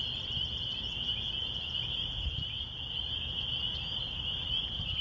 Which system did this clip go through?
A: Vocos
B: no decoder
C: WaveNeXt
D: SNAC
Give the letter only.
B